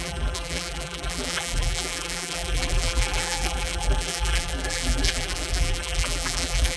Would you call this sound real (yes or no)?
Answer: no